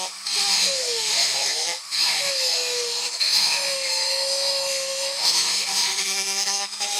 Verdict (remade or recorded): remade